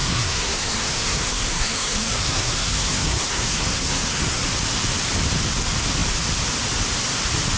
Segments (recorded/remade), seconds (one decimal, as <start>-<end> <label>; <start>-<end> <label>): 0.0-4.4 remade; 4.4-7.6 recorded